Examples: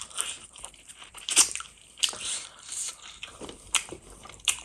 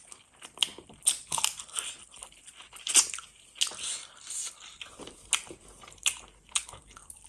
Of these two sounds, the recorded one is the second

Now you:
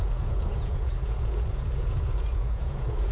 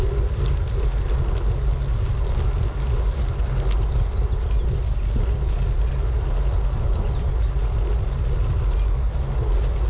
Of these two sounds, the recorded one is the second